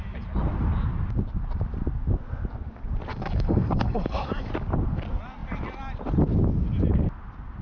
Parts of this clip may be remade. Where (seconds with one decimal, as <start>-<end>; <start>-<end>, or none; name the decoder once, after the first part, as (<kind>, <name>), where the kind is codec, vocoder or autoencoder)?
3.1-4.5 (codec, DAC)